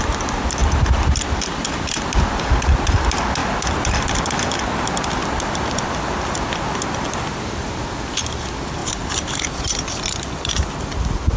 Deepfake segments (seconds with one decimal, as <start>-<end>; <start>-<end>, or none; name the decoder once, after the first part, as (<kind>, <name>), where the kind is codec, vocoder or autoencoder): 0.6-2.4 (vocoder, BigVGAN v2); 3.4-4.2; 5.2-6.5; 8.8-10.5